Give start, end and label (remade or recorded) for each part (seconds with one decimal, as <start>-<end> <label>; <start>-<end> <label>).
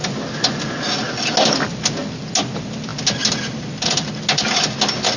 0.0-5.2 recorded